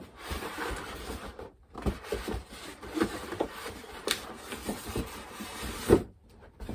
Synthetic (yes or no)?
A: yes